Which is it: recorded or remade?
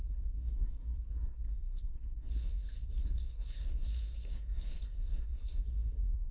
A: remade